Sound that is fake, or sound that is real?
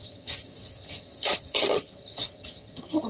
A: fake